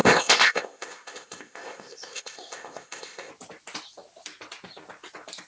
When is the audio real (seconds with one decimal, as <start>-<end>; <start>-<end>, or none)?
3.3-5.5